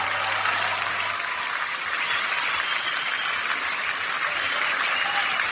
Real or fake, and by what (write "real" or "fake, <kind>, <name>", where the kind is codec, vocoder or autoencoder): real